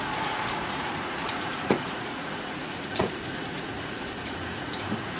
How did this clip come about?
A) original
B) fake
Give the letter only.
B